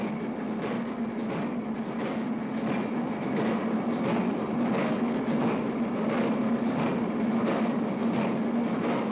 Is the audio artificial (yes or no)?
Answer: no